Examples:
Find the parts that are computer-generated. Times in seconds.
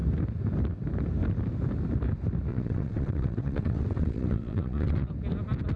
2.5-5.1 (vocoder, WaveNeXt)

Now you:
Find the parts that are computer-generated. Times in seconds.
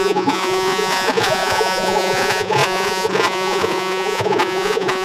0.0-5.0 (vocoder, Vocos)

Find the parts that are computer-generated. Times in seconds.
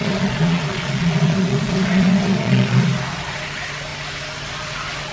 0.0-2.8 (vocoder, Vocos)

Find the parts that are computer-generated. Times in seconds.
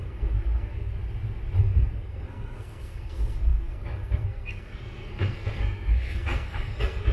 0.0-1.0 (codec, SNAC); 1.6-7.1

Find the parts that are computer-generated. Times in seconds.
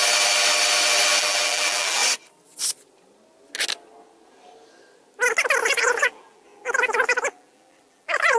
1.2-2.0 (vocoder, BigVGAN v2); 5.6-8.4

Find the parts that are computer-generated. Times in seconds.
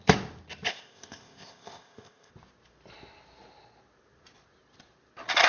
0.7-2.3 (codec, ZipCodec)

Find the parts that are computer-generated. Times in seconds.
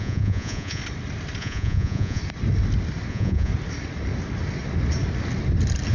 0.0-0.8 (vocoder, Vocos); 1.4-2.2; 3.1-3.5